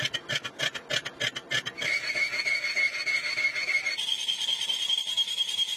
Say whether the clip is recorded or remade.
recorded